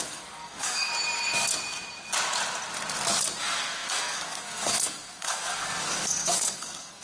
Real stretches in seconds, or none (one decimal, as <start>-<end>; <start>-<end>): 0.9-3.4